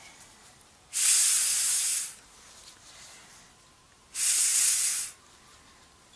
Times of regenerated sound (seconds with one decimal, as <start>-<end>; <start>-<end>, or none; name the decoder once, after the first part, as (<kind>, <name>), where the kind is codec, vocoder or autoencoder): none